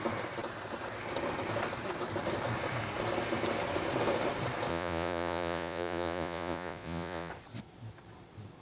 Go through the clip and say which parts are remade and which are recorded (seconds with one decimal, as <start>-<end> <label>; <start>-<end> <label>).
0.0-4.7 recorded; 4.7-7.3 remade; 7.3-8.6 recorded